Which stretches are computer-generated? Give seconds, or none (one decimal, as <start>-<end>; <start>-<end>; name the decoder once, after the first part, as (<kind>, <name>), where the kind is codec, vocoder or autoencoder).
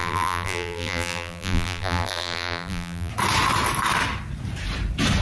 0.0-3.1 (vocoder, BigVGAN v2)